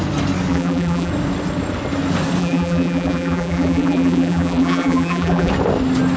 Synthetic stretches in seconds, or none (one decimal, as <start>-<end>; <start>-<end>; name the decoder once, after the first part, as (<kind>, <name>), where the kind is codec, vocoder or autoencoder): 0.5-1.1 (vocoder, BigVGAN v2); 2.4-5.5